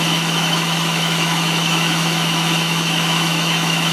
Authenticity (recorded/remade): remade